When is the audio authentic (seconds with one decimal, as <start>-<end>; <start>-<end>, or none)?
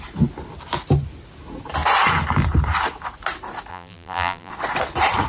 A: 0.0-3.7; 4.5-5.3